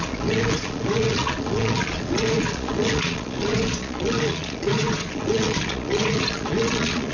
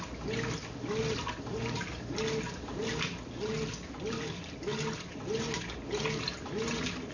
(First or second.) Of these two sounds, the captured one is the second